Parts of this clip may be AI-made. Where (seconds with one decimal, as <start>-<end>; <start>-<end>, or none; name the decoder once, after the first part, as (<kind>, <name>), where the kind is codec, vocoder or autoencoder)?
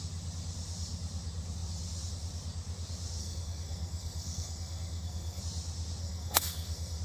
3.2-5.4 (codec, SNAC); 6.0-7.0